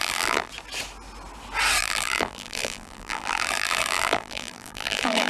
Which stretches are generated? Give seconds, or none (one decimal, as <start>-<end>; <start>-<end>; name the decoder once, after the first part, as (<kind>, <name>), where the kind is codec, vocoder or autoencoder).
0.0-0.5 (vocoder, BigVGAN v2); 1.8-5.3

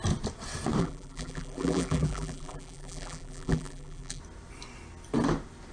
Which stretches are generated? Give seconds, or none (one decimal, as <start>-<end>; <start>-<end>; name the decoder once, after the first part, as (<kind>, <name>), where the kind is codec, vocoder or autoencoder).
0.8-4.2 (vocoder, BigVGAN v2)

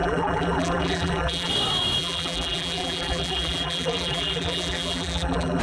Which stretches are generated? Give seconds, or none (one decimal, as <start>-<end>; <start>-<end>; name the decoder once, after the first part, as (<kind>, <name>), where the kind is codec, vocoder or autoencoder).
0.0-1.5 (vocoder, BigVGAN v2); 2.0-5.6

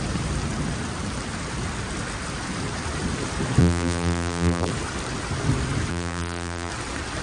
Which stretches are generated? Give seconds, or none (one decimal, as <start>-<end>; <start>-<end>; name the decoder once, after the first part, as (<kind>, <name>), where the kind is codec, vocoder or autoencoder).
3.6-4.7 (vocoder, BigVGAN v2); 5.9-6.7

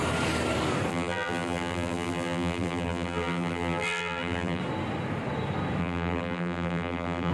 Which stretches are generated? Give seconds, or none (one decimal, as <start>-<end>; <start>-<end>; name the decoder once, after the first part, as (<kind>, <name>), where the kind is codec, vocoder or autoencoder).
0.9-4.6 (vocoder, BigVGAN v2); 5.8-7.3

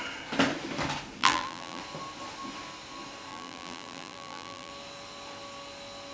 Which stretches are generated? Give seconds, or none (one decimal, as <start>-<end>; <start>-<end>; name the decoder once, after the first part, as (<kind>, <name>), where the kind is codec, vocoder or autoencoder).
1.2-1.8 (vocoder, BigVGAN v2); 3.3-4.7

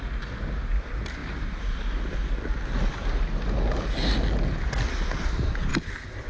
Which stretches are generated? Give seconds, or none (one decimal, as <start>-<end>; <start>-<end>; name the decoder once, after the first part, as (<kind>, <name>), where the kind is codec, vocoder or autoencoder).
1.2-1.8 (vocoder, BigVGAN v2); 5.7-6.3

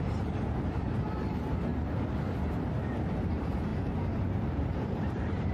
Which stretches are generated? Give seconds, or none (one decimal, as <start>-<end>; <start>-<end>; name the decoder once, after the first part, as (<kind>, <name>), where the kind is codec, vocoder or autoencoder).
0.0-1.7 (vocoder, BigVGAN v2); 3.3-5.5